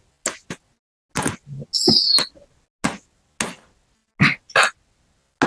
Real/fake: real